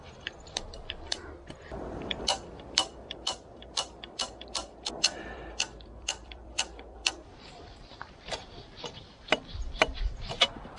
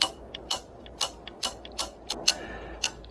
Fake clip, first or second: first